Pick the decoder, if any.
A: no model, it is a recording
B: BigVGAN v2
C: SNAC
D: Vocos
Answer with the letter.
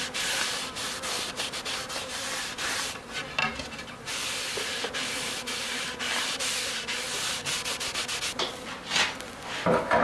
A